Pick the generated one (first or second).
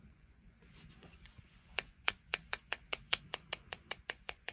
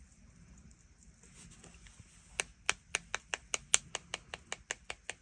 first